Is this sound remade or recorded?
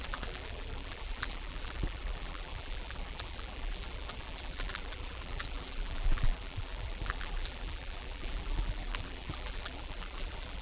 remade